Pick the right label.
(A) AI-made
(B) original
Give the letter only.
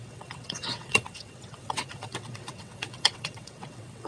A